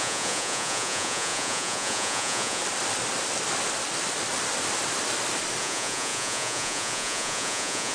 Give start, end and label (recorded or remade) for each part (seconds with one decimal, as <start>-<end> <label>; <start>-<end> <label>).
0.0-2.6 remade; 2.6-5.6 recorded; 5.6-7.9 remade